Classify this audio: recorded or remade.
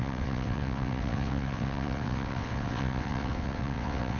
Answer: remade